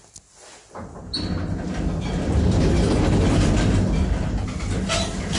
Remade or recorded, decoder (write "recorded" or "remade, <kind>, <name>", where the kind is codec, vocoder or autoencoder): recorded